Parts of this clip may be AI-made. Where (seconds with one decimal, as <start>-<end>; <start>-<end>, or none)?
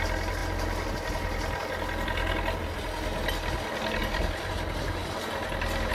0.4-0.9; 4.0-4.5